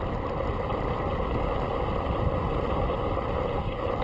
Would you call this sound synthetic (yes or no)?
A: no